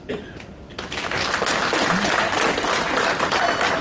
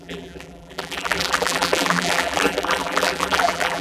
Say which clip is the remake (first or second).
second